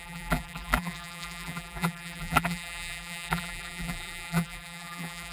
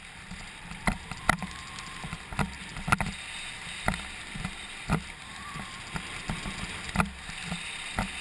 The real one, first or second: second